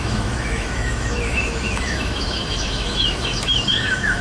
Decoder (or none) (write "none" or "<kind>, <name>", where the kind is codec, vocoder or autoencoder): autoencoder, DAC-VAE